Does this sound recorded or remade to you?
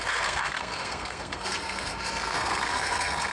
remade